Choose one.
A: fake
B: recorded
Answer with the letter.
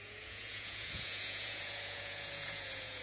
A